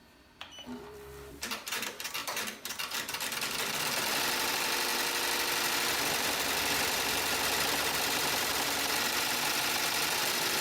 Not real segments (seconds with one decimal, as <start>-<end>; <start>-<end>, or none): 0.0-10.6